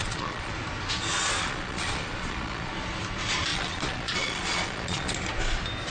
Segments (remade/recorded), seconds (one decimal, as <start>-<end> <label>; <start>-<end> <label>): 0.0-0.5 remade; 0.5-1.3 recorded; 1.3-2.7 remade; 2.7-3.5 recorded; 3.5-5.1 remade; 5.1-5.9 recorded